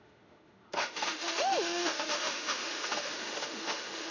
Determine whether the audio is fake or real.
fake